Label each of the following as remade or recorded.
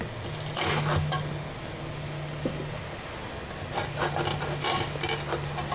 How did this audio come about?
recorded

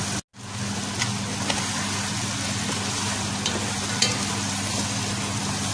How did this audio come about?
recorded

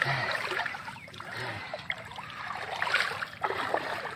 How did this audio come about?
remade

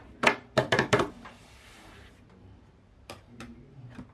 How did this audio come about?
remade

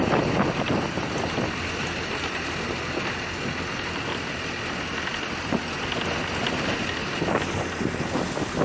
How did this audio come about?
recorded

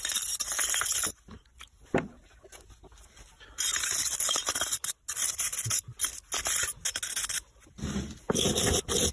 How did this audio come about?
recorded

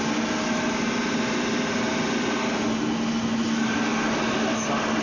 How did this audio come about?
recorded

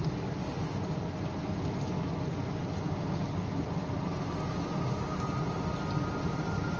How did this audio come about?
recorded